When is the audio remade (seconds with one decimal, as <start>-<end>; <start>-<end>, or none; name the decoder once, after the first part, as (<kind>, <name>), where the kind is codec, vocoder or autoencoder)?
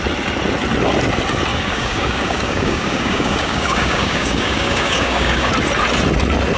1.5-5.5 (codec, DAC)